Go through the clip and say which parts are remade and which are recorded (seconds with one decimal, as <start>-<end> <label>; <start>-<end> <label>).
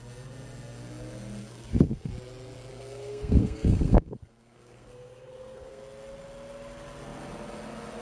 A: 0.0-1.4 recorded; 1.4-2.1 remade; 2.1-2.7 recorded; 2.7-5.8 remade; 5.8-8.0 recorded